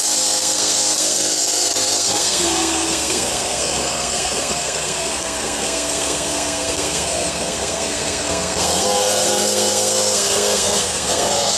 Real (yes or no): no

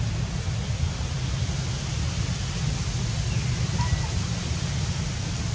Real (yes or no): yes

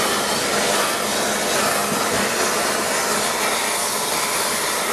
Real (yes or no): yes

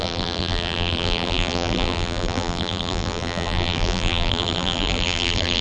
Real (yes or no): no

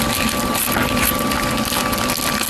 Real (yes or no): yes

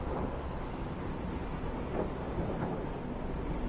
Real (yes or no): yes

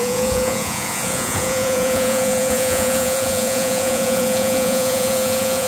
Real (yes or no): no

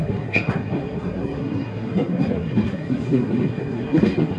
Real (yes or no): no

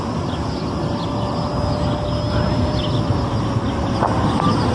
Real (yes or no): yes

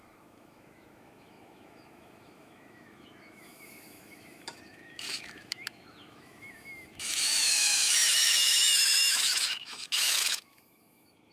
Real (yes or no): no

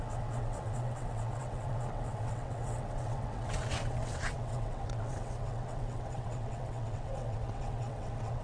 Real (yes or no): no